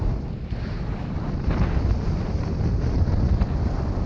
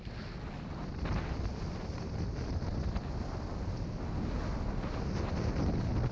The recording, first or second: second